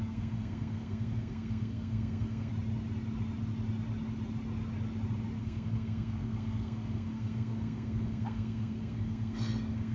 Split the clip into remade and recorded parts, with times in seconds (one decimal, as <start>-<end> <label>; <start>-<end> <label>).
0.0-2.5 remade; 2.5-5.4 recorded; 5.4-9.9 remade